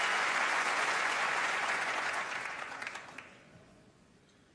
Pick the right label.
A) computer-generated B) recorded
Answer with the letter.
A